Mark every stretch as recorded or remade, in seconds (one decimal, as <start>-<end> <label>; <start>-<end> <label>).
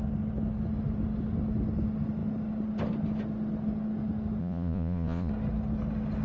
0.0-4.4 recorded; 4.4-5.3 remade; 5.3-6.2 recorded